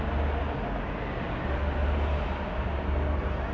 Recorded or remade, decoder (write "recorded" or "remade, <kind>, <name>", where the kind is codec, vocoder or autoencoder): recorded